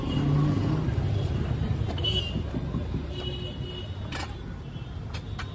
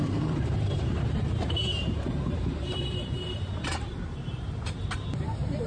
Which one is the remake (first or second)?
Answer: second